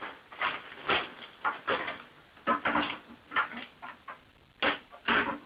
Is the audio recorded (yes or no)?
yes